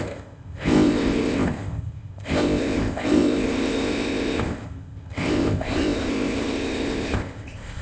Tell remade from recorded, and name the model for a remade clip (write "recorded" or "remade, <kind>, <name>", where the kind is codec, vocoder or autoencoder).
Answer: remade, codec, ZipCodec